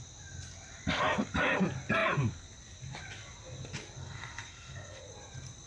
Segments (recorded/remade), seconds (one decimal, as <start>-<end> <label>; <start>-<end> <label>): 0.0-4.0 recorded; 4.0-5.0 remade; 5.0-5.7 recorded